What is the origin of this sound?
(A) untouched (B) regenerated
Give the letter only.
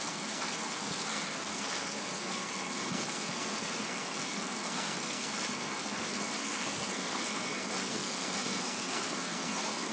B